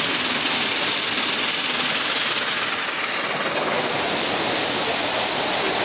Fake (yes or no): no